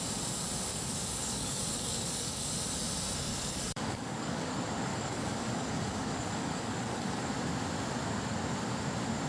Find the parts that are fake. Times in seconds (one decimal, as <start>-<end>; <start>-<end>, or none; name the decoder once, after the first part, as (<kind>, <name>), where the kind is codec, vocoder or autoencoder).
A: 0.7-2.5 (codec, DAC); 3.3-4.5; 4.9-7.2

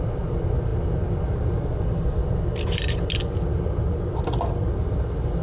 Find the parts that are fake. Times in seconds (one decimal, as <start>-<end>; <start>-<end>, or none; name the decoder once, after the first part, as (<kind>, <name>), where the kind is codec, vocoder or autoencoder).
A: none

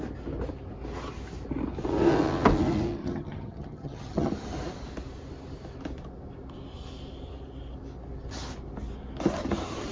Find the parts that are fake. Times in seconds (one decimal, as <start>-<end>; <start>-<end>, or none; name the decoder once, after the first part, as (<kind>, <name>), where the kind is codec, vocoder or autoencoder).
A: 3.0-4.3 (vocoder, HiFi-GAN)

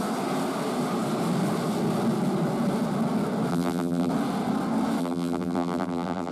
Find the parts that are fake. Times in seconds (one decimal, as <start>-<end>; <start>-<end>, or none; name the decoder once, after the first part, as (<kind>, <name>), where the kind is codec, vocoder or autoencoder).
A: 3.5-4.1 (vocoder, BigVGAN v2); 5.0-6.3

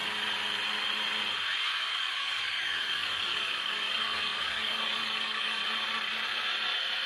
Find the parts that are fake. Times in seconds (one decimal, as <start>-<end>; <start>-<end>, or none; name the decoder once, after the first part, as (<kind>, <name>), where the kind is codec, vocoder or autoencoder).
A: 1.9-5.6 (codec, DAC)

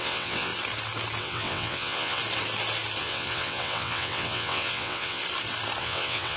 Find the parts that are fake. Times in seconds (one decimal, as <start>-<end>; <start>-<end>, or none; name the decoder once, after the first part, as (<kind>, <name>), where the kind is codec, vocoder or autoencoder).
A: 0.0-0.5 (vocoder, WaveNeXt); 1.2-2.2; 3.0-5.2; 5.8-6.4